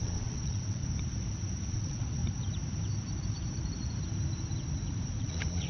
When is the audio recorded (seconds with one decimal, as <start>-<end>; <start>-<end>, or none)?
0.8-1.7; 2.2-5.2